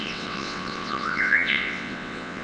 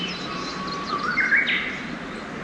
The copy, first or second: first